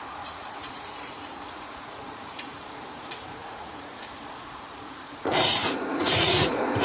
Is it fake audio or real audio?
fake